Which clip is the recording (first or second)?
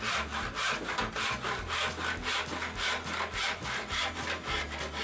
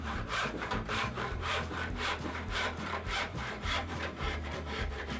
first